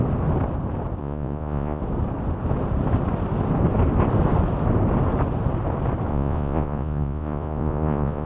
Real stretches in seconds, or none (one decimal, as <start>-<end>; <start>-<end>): 0.0-1.0; 1.8-6.1